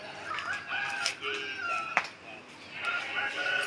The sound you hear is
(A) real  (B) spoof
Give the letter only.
A